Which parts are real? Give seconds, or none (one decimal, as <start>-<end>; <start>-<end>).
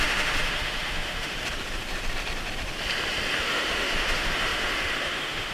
1.3-3.4